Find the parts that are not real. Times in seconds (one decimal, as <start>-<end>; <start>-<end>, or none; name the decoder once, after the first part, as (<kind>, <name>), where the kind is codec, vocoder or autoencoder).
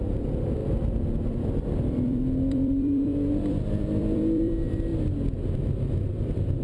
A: 0.0-4.9 (vocoder, BigVGAN v2); 6.1-6.6